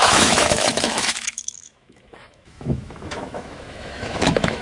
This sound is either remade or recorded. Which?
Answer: remade